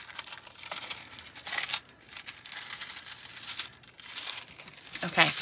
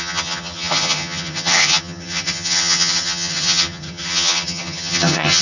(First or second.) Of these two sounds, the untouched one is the first